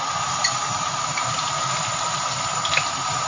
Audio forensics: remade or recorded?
recorded